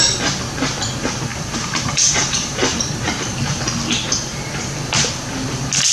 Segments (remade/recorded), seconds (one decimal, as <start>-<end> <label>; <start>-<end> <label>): 0.0-1.3 recorded; 1.3-2.9 remade; 2.9-5.9 recorded

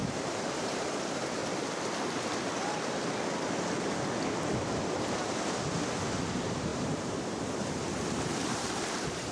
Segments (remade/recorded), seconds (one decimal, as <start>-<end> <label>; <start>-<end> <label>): 0.0-1.4 remade; 1.4-6.2 recorded; 6.2-9.3 remade

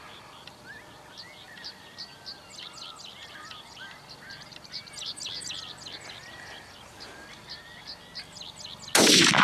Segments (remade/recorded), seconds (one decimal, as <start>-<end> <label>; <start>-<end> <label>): 0.0-9.4 recorded